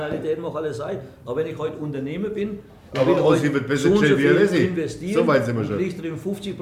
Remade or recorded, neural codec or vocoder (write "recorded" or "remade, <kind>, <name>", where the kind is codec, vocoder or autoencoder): recorded